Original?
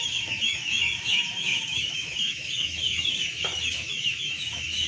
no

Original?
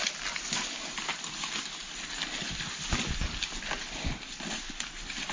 yes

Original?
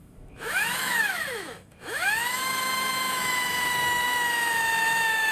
no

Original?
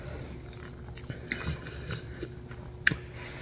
yes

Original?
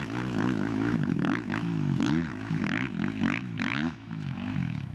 no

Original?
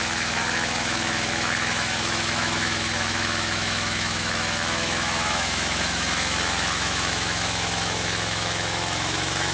no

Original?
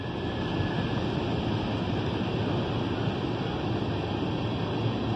yes